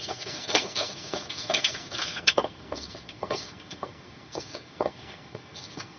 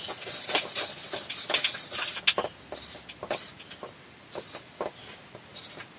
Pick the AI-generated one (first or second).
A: first